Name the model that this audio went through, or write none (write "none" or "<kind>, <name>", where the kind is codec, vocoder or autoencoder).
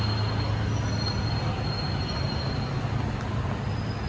none